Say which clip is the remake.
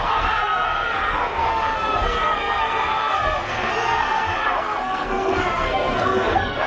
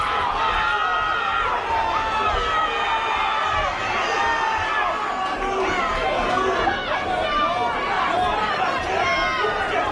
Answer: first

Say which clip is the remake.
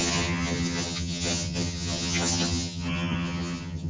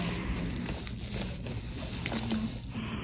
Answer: first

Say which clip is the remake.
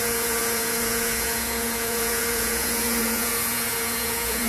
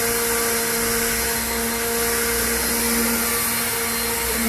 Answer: first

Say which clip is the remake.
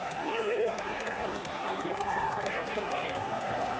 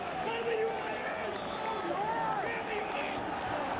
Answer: first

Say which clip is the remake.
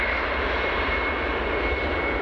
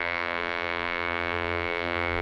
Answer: second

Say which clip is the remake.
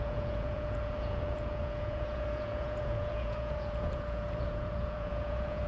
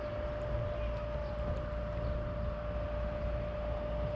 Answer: first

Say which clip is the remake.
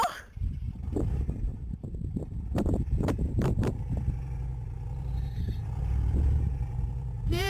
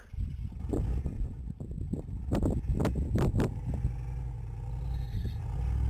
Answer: first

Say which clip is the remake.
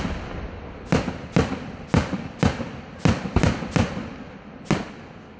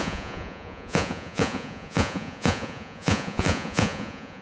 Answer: second